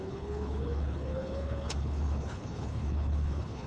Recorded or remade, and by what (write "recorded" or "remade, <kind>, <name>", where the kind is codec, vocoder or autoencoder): remade, codec, HILCodec